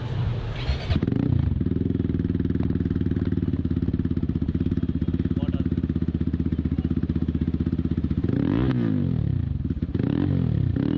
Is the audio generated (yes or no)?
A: no